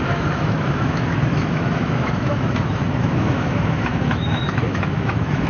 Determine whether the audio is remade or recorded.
remade